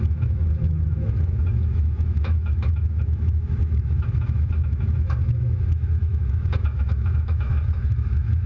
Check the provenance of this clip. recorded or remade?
remade